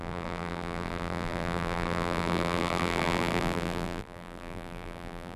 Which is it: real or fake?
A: fake